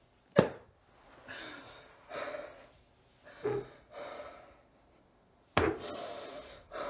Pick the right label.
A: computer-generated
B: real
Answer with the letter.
B